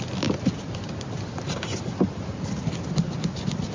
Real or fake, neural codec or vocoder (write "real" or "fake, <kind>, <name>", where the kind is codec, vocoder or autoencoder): real